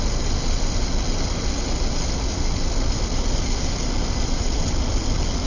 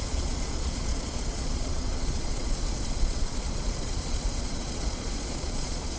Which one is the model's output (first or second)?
second